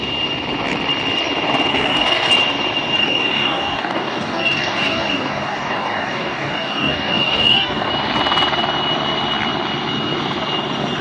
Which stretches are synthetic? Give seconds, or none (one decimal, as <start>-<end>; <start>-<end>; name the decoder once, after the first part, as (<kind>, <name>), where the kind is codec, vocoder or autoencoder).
1.7-2.3 (codec, DAC); 3.0-7.9